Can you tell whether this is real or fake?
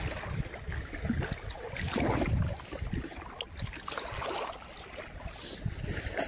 real